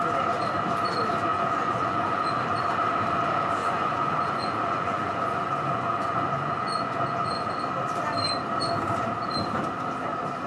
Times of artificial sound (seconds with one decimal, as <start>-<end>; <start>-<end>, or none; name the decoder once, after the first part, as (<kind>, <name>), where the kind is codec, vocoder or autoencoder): 1.3-2.3 (vocoder, Vocos); 3.6-7.5